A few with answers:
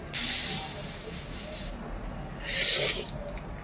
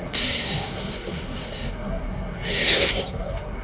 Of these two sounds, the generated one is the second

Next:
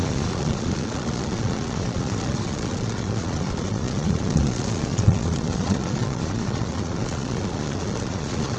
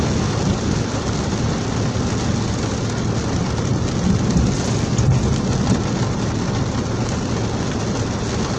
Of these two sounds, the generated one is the first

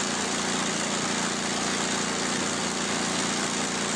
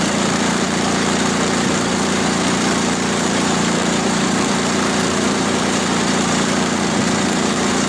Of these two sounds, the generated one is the second